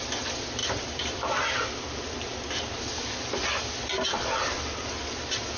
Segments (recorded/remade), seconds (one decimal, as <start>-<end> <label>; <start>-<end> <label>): 0.0-0.6 recorded; 0.6-1.9 remade; 1.9-5.6 recorded